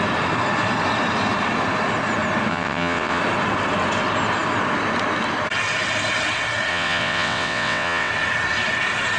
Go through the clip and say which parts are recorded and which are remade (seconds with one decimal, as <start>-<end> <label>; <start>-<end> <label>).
0.0-2.5 recorded; 2.5-3.2 remade; 3.2-6.7 recorded; 6.7-8.1 remade; 8.1-9.2 recorded